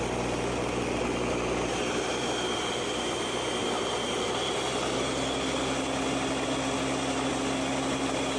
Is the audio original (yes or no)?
yes